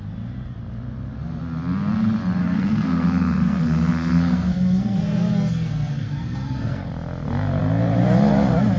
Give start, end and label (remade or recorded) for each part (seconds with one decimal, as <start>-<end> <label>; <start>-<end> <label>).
0.0-2.4 recorded; 2.4-6.9 remade; 6.9-8.8 recorded